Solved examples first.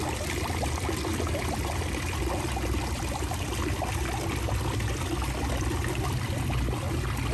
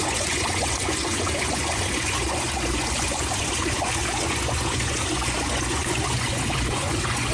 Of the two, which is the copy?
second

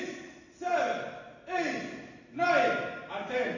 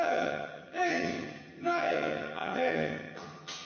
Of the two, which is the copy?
second